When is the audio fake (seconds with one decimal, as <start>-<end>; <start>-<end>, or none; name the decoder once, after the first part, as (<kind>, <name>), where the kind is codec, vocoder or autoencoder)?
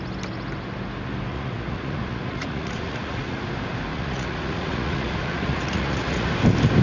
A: 1.3-3.4 (vocoder, Vocos); 3.9-6.3